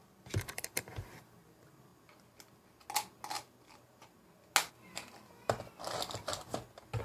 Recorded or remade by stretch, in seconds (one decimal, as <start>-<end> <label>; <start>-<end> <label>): 0.0-1.9 remade; 1.9-4.7 recorded; 4.7-6.3 remade; 6.3-7.0 recorded